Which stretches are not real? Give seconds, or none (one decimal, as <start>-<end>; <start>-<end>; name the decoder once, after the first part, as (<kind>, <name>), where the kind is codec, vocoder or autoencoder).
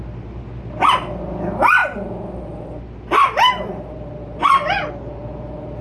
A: none